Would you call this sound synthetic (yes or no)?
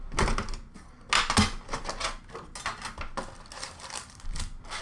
no